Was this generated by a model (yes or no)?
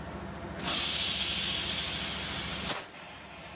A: no